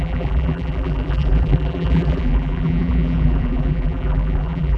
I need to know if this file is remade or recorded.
remade